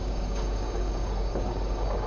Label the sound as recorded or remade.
remade